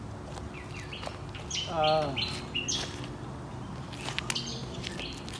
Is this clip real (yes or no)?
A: yes